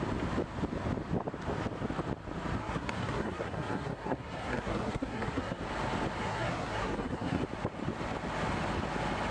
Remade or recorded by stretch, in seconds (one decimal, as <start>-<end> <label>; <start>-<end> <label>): 0.0-2.6 recorded; 2.6-5.6 remade; 5.6-6.2 recorded; 6.2-7.4 remade; 7.4-9.3 recorded